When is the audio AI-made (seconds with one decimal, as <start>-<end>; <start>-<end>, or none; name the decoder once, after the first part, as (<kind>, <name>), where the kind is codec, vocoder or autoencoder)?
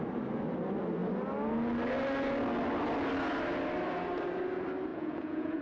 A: 4.9-5.6 (vocoder, Vocos)